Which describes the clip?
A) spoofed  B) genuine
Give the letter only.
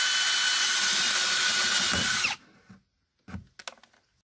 B